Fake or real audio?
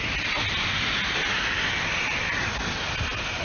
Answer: real